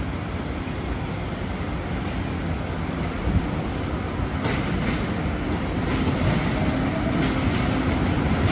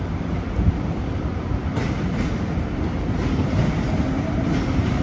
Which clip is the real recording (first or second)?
first